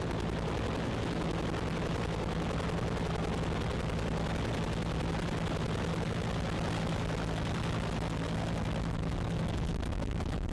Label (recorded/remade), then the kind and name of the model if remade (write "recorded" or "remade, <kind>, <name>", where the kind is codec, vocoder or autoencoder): recorded